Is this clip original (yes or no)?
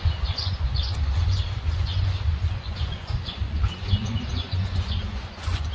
no